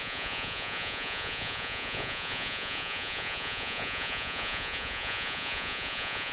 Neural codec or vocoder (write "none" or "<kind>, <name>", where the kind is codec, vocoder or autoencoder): vocoder, Vocos